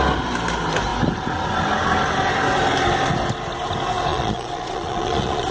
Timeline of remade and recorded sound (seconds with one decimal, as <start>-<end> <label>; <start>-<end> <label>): 0.0-4.1 recorded; 4.1-5.5 remade